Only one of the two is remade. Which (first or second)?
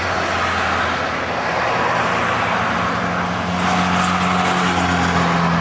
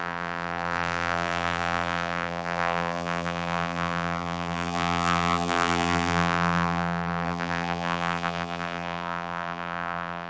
second